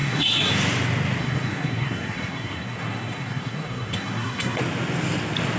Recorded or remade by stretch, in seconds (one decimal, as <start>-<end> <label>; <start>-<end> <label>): 0.0-0.5 remade; 0.5-1.2 recorded; 1.2-4.6 remade; 4.6-5.6 recorded